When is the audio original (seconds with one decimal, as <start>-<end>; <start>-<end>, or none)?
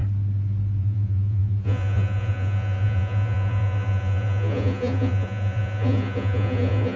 0.0-0.8